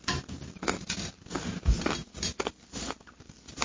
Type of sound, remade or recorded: recorded